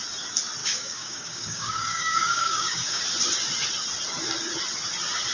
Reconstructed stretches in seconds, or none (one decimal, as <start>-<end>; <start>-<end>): 0.6-3.0